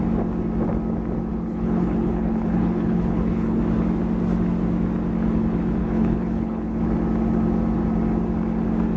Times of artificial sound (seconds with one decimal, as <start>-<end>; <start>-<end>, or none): 1.3-3.6; 5.8-6.8

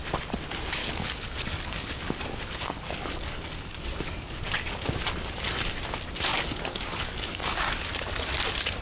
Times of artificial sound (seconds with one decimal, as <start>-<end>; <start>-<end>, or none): 0.8-4.9; 6.3-7.9

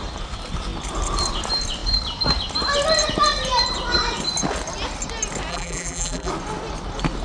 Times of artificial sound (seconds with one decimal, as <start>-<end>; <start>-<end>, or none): 5.5-6.3

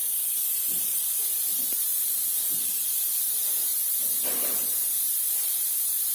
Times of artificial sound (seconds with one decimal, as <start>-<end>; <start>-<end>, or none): 0.0-0.8

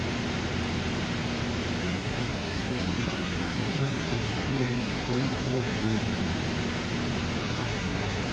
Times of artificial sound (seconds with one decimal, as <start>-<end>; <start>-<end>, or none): 1.8-6.0; 7.4-8.3

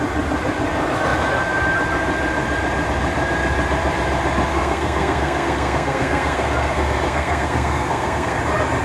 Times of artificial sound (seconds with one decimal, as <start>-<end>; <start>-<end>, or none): 4.5-8.4

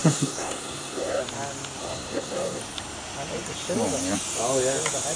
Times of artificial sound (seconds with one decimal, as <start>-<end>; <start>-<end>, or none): 0.0-1.2; 1.8-2.6